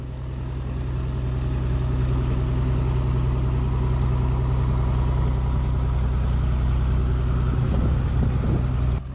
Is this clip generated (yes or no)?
no